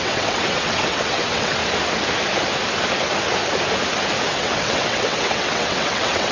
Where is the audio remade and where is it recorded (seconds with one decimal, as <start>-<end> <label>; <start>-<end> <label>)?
0.0-1.6 remade; 1.6-4.3 recorded; 4.3-6.3 remade